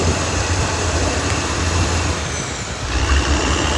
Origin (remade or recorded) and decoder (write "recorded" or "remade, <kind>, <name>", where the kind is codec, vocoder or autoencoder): remade, vocoder, BigVGAN v2